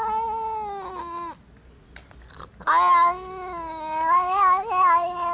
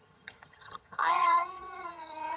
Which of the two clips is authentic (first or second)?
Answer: first